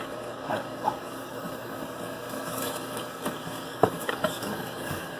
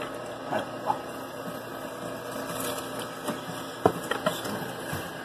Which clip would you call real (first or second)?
second